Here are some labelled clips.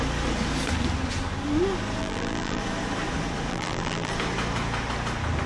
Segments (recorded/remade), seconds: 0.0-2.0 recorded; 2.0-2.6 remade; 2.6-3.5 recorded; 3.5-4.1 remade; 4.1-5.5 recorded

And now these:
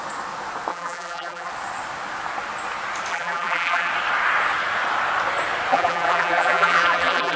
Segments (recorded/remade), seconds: 0.0-0.7 recorded; 0.7-1.5 remade; 1.5-3.1 recorded; 3.1-3.9 remade; 3.9-5.7 recorded; 5.7-7.4 remade

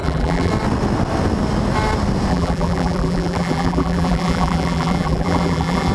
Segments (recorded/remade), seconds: 0.0-0.5 remade; 0.5-2.3 recorded; 2.3-5.9 remade